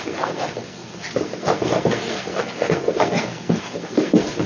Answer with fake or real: fake